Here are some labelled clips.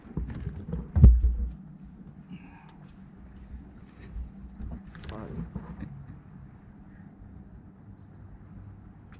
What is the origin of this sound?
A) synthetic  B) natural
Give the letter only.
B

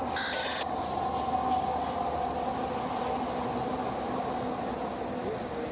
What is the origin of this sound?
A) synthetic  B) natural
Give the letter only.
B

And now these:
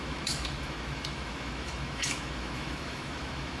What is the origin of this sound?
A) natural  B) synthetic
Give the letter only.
B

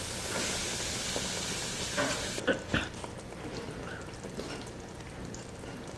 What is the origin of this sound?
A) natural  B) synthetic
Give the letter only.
A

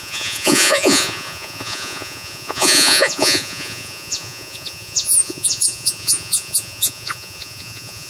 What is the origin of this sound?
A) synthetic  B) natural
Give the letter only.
A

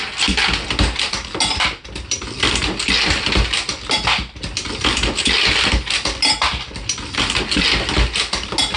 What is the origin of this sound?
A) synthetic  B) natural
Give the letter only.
B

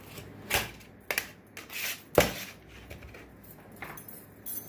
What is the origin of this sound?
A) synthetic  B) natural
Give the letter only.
B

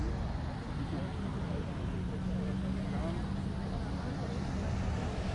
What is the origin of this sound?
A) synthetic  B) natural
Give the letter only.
B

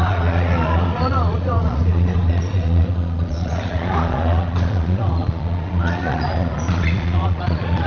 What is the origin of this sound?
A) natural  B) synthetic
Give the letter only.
B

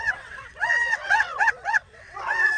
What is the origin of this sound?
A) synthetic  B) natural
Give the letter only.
A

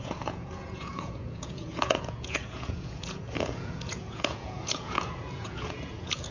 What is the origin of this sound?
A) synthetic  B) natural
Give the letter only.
A